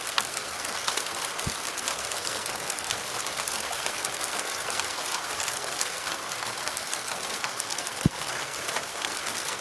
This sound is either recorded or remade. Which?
remade